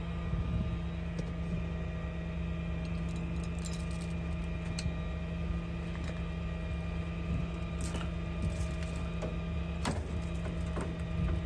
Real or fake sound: real